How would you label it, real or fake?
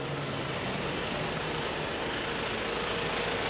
real